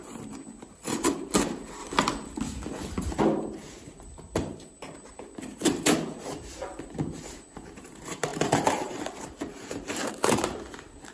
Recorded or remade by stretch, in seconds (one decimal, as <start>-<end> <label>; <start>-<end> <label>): 0.0-1.8 remade; 1.8-3.2 recorded; 3.2-11.1 remade